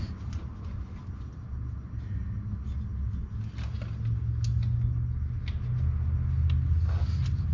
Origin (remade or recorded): recorded